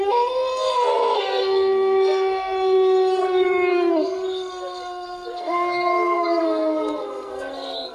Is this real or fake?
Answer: fake